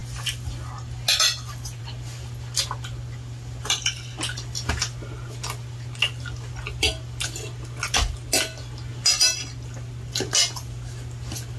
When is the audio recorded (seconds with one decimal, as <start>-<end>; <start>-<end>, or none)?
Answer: 0.0-11.6